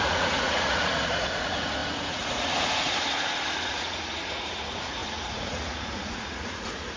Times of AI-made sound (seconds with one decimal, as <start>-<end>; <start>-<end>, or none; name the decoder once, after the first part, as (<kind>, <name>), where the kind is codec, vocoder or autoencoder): 0.0-7.0 (vocoder, Vocos)